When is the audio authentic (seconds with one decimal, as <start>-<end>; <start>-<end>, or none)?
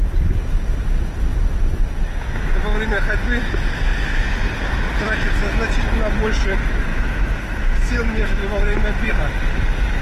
0.0-6.9; 9.1-10.0